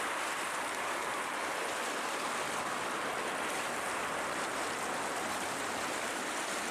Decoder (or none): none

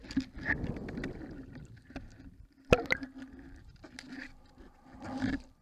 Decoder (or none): none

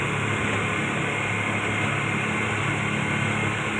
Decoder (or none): none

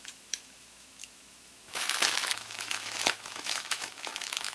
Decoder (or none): autoencoder, DAC-VAE